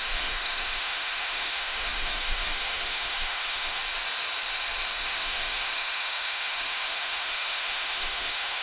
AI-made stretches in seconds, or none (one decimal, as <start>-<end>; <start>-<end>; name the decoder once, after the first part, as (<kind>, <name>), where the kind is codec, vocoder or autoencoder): 0.0-3.8 (autoencoder, DAC-VAE); 5.0-8.6